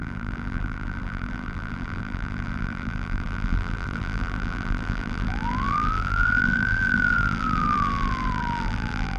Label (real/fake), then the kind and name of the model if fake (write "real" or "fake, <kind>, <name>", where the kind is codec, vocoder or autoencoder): fake, vocoder, BigVGAN v2